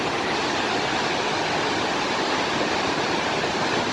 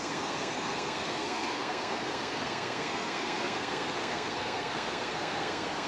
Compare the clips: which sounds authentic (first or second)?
first